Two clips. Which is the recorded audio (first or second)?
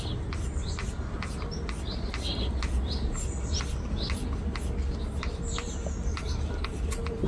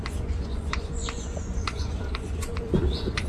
first